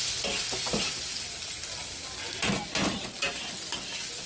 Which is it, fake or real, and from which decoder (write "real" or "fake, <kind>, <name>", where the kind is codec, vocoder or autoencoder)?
real